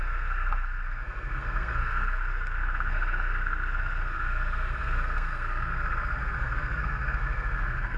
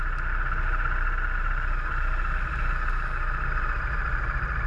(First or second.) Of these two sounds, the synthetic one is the first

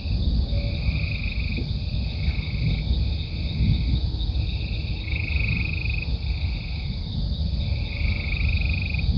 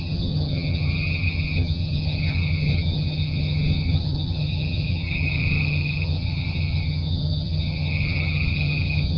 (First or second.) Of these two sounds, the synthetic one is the second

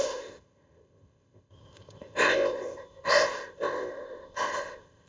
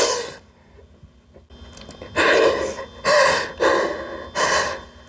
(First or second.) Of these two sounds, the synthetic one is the first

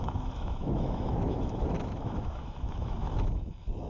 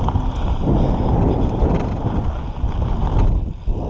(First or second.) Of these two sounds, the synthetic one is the first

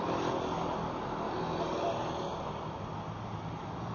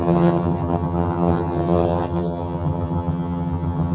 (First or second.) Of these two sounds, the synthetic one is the second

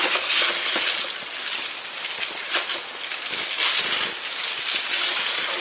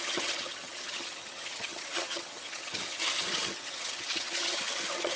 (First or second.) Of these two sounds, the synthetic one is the second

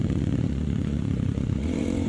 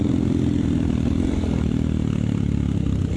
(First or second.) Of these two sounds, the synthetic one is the first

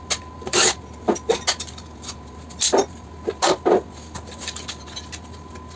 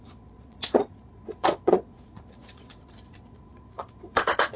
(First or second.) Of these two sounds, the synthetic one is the second